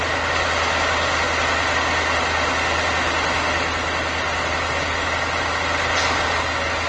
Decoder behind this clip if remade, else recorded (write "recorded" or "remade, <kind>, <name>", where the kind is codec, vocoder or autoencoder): recorded